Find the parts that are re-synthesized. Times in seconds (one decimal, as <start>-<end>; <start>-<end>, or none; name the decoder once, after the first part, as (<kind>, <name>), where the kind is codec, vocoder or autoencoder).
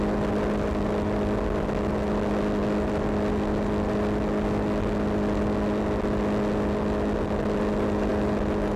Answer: none